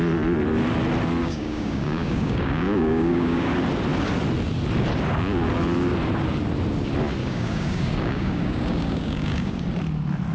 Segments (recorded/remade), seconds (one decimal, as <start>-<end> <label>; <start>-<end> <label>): 0.0-1.2 recorded; 1.2-3.5 remade; 3.5-7.2 recorded; 7.2-9.6 remade; 9.6-10.3 recorded

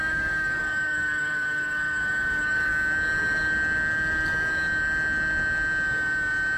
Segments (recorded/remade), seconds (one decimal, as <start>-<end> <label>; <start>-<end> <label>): 0.0-2.7 remade; 2.7-6.6 recorded

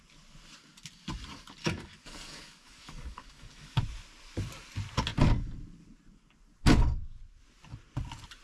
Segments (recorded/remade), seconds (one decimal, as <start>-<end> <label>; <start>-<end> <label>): 0.0-1.6 recorded; 1.6-3.8 remade; 3.8-8.4 recorded

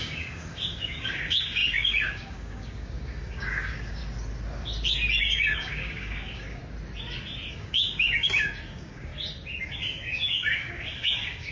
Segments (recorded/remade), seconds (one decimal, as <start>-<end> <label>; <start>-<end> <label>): 0.0-4.0 remade; 4.0-5.2 recorded; 5.2-6.6 remade; 6.6-7.5 recorded; 7.5-9.1 remade; 9.1-9.6 recorded; 9.6-11.5 remade

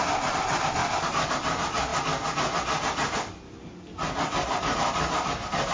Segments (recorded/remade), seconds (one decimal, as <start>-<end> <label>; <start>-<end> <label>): 0.0-5.7 recorded